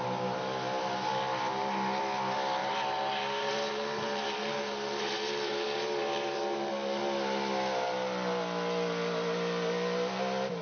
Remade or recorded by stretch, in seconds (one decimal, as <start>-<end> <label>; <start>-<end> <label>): 0.0-2.6 recorded; 2.6-6.7 remade; 6.7-10.6 recorded